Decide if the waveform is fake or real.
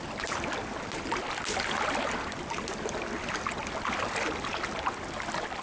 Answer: real